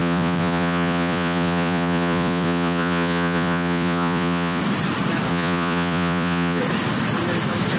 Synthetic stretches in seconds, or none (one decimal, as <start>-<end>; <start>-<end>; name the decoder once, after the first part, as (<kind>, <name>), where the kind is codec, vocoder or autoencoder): 0.0-4.6 (vocoder, Vocos); 5.3-6.6